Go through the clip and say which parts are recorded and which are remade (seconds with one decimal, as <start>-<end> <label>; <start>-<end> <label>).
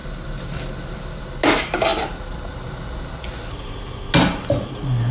0.0-1.2 remade; 1.2-5.1 recorded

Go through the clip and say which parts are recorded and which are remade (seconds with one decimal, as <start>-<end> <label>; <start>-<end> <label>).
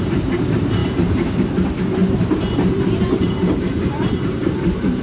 0.0-5.0 remade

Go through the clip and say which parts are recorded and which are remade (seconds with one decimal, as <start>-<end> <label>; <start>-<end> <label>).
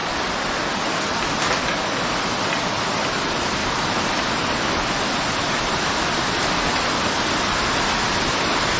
0.0-3.6 recorded; 3.6-5.3 remade; 5.3-8.8 recorded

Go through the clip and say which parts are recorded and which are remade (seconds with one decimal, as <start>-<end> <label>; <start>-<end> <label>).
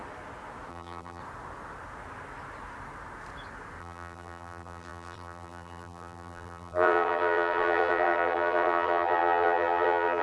0.0-0.7 recorded; 0.7-1.2 remade; 1.2-3.8 recorded; 3.8-10.2 remade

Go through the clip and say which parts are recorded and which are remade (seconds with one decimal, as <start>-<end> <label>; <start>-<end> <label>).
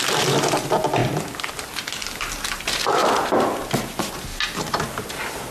0.0-5.5 recorded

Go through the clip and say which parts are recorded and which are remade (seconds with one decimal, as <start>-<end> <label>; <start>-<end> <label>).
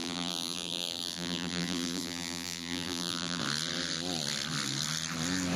0.0-3.4 remade; 3.4-5.6 recorded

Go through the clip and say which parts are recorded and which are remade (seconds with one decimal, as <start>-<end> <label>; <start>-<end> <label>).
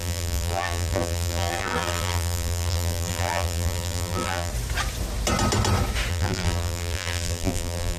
0.0-4.5 remade; 4.5-6.1 recorded; 6.1-8.0 remade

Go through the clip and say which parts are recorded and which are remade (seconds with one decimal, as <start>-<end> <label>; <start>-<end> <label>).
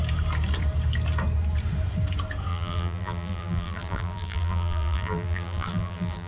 0.0-2.5 recorded; 2.5-6.3 remade